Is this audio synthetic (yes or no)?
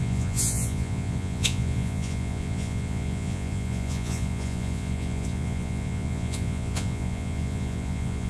yes